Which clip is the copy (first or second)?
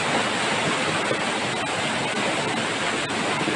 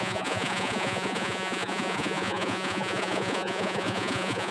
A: second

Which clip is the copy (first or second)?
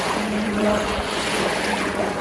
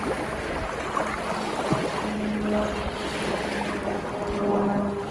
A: first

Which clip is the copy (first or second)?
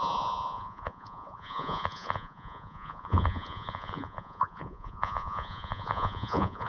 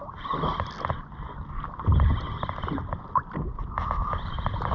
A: first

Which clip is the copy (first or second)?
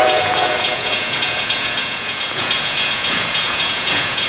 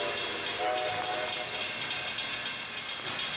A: first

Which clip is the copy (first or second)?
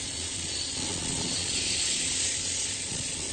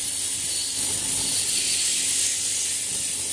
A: first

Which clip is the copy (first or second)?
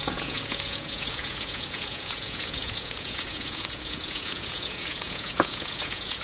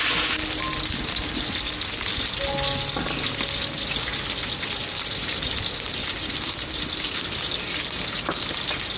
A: first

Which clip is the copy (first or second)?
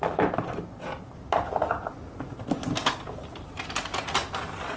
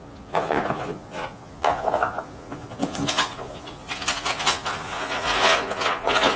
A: second